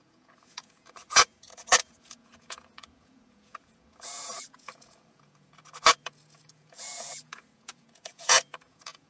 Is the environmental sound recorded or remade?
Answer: remade